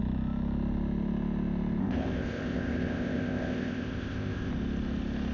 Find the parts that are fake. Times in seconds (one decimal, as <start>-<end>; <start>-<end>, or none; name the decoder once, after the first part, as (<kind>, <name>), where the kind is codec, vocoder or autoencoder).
1.8-4.5 (codec, ZipCodec)